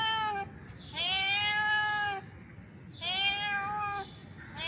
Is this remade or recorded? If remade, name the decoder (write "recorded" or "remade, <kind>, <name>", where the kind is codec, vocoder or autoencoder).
recorded